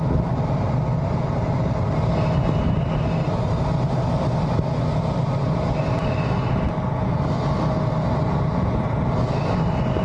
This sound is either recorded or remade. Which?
recorded